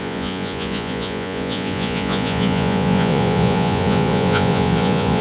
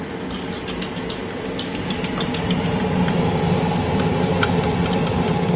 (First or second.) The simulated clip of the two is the first